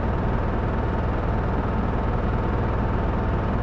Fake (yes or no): no